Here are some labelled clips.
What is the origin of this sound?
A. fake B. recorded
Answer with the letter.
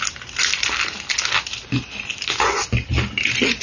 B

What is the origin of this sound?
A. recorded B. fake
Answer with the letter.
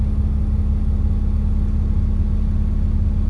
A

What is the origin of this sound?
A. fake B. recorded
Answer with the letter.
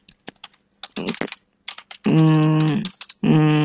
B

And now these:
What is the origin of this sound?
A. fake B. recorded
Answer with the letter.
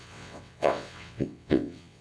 A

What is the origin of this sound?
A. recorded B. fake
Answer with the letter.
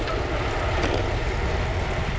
A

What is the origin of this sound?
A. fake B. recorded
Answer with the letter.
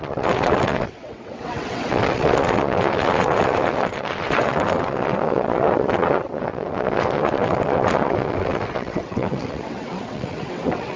A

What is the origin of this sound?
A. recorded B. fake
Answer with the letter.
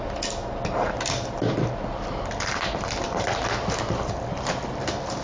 A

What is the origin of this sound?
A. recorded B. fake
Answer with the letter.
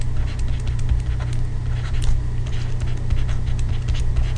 A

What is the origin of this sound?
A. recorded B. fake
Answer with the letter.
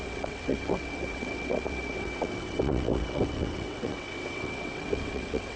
B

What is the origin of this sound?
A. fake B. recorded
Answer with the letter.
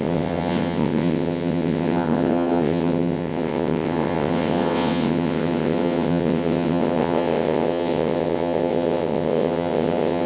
A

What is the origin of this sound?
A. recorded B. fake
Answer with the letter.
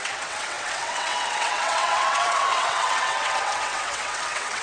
B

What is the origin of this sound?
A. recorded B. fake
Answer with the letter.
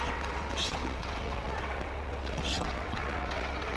B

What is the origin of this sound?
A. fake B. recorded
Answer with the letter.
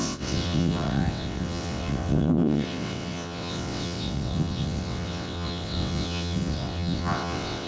A